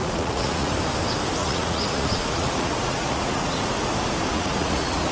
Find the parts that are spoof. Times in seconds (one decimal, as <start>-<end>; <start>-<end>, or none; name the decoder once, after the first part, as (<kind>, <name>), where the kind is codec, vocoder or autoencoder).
0.0-0.7 (vocoder, Vocos); 1.4-3.7; 4.3-5.1